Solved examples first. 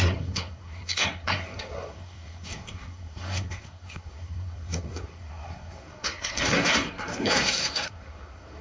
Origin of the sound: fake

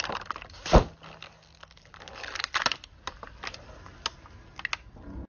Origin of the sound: real